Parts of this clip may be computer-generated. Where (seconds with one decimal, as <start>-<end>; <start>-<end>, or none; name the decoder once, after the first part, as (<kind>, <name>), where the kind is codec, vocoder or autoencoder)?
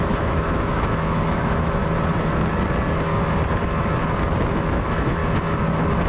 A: 0.0-1.8 (autoencoder, DAC-VAE); 4.5-5.2